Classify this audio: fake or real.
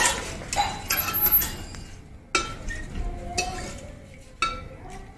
real